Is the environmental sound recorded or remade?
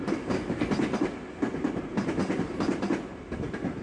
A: recorded